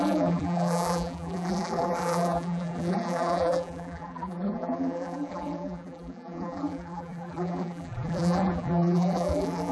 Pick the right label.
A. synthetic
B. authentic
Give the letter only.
A